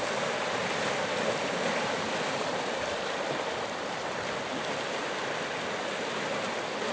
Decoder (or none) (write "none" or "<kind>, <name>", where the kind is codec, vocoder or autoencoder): none